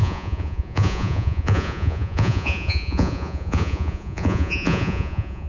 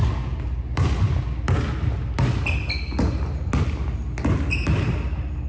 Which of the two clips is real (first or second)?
second